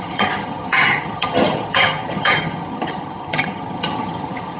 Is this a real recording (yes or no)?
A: no